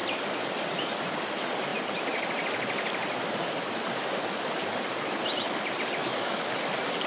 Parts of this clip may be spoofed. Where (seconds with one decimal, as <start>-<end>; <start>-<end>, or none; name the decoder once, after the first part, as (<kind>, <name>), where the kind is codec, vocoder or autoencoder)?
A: 6.0-6.5 (autoencoder, DAC-VAE)